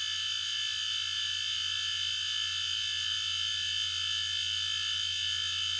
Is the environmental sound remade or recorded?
recorded